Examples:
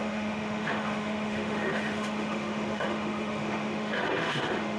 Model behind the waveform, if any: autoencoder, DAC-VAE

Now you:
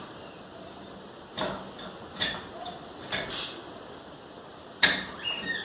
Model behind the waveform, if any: none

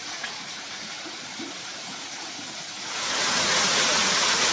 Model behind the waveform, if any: vocoder, Vocos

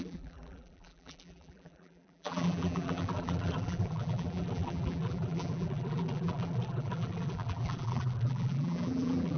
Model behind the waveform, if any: vocoder, BigVGAN v2